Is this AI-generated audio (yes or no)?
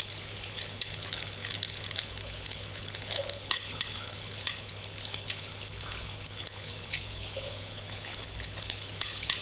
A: yes